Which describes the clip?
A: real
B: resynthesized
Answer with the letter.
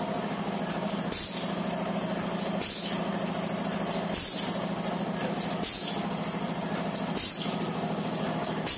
A